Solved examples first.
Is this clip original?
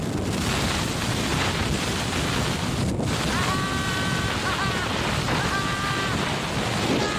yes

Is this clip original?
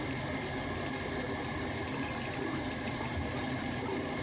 no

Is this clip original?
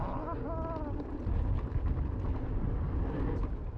yes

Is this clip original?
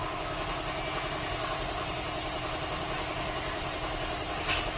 yes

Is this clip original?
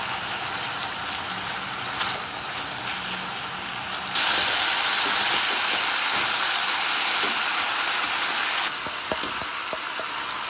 yes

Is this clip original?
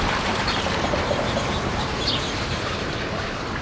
no